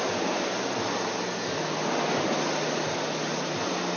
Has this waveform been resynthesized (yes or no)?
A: no